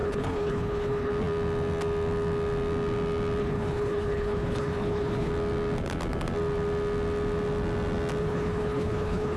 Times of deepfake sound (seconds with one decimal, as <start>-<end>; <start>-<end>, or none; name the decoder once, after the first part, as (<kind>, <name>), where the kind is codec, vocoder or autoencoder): 0.0-1.1 (codec, HILCodec); 3.4-5.3; 8.2-9.4